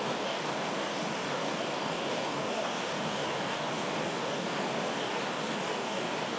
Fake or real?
fake